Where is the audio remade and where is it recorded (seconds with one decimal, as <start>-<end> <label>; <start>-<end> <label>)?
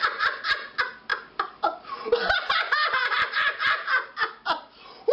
0.0-5.1 recorded